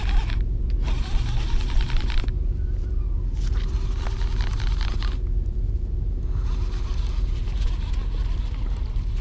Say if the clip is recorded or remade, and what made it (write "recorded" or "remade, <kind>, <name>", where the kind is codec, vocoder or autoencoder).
recorded